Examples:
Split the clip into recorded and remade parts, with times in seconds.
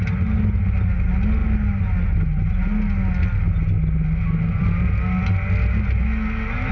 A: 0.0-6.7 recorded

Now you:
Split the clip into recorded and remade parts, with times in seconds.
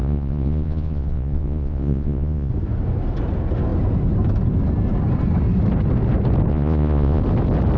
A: 0.0-2.5 remade; 2.5-6.5 recorded; 6.5-7.2 remade; 7.2-7.8 recorded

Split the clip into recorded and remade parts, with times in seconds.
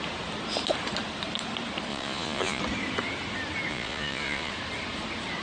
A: 0.0-1.9 recorded; 1.9-2.6 remade; 2.6-3.7 recorded; 3.7-4.5 remade; 4.5-5.4 recorded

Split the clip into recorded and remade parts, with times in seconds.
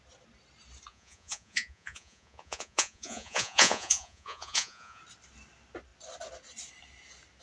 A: 0.0-0.9 recorded; 0.9-5.0 remade; 5.0-7.4 recorded